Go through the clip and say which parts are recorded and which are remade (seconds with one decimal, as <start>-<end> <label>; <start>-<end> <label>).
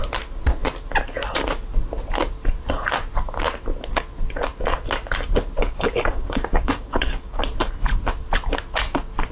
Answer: 0.0-5.6 recorded; 5.6-7.4 remade; 7.4-9.3 recorded